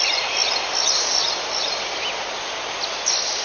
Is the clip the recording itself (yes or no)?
yes